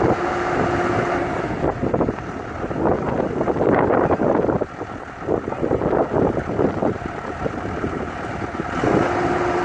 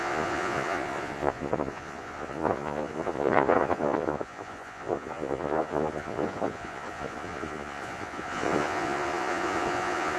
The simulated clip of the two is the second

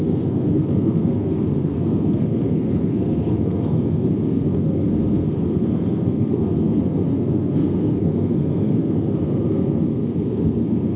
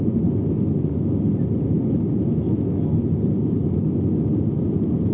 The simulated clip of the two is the first